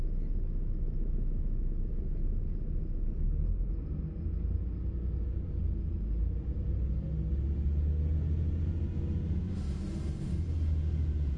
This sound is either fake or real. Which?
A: real